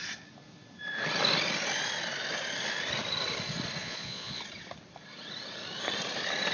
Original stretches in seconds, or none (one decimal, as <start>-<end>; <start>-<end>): 0.0-3.8; 4.4-6.5

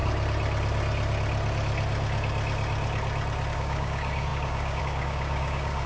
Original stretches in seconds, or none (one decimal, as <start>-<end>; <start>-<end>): 0.0-3.5

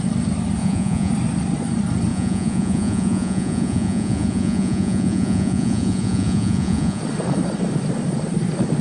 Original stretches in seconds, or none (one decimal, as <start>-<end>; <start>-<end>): 0.0-0.6; 1.1-2.1; 7.0-8.8

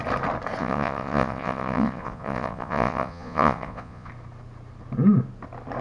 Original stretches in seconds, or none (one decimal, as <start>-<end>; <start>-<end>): 0.0-0.6; 4.1-5.8

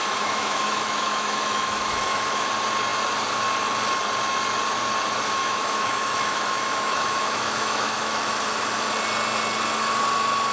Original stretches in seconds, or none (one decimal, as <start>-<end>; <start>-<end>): 2.5-5.4; 8.3-10.5

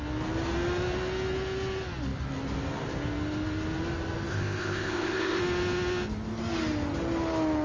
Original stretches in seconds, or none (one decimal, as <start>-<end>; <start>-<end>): 0.0-4.3; 5.4-7.6

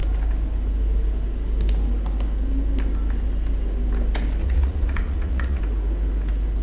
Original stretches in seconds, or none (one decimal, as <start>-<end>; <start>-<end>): 0.0-4.4; 5.6-6.6

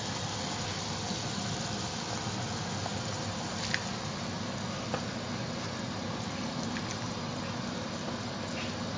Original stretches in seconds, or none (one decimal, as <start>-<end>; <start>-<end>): 0.0-9.0